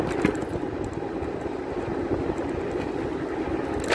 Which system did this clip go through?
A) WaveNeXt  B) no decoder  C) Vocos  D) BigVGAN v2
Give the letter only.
B